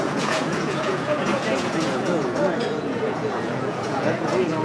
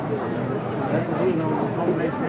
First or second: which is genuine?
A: second